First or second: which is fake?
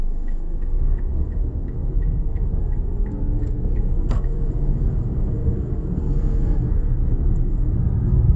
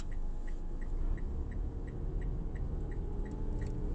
first